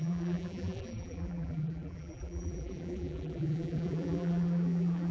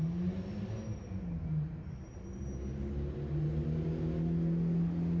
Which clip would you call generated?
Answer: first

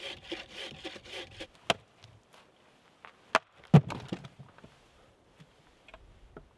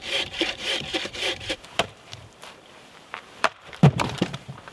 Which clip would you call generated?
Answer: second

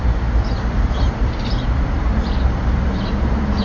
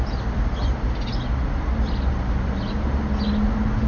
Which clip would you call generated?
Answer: first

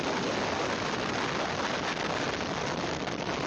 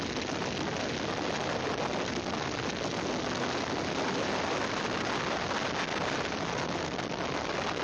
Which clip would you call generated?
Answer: first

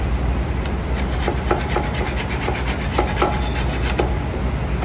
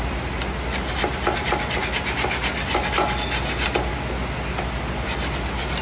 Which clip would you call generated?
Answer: first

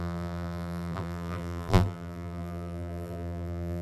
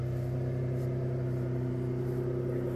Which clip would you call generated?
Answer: first